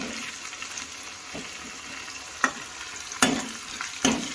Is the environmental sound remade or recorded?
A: recorded